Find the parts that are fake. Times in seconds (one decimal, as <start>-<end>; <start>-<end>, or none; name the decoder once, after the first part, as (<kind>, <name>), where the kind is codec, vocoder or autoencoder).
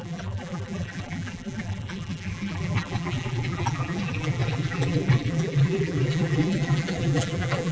0.0-7.7 (vocoder, BigVGAN v2)